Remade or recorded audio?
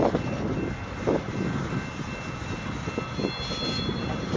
recorded